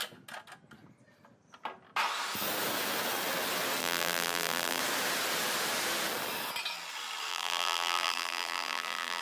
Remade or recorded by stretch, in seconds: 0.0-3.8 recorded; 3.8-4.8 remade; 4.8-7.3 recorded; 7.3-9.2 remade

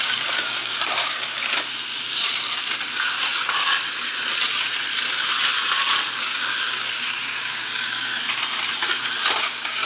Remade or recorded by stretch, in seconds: 0.0-1.5 remade; 1.5-6.2 recorded; 6.2-8.1 remade; 8.1-9.4 recorded; 9.4-9.9 remade